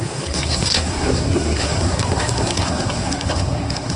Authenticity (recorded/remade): remade